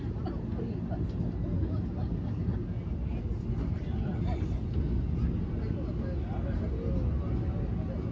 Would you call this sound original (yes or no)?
yes